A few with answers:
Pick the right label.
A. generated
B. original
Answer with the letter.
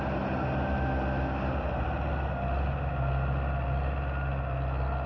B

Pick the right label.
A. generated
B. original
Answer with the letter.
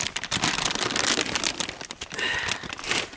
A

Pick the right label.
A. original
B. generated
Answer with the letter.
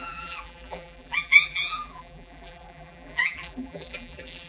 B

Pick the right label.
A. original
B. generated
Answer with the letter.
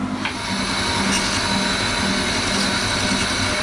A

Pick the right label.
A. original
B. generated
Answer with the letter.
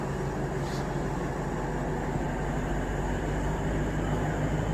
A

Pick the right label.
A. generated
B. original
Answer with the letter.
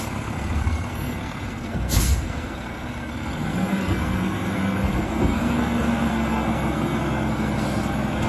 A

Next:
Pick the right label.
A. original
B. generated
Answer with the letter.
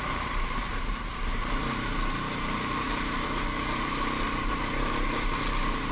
B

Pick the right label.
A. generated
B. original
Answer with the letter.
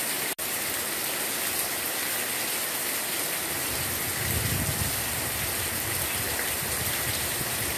B